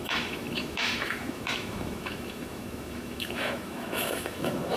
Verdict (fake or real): fake